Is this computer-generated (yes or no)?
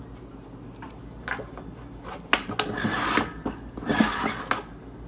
no